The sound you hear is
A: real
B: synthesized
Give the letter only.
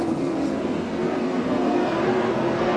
B